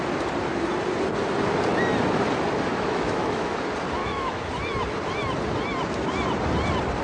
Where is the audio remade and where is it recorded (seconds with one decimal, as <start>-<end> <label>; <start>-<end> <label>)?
0.0-2.7 recorded; 2.7-3.5 remade; 3.5-4.0 recorded; 4.0-4.5 remade; 4.5-7.0 recorded